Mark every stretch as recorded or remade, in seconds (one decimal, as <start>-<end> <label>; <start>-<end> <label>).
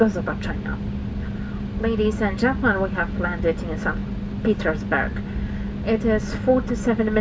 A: 0.0-7.2 recorded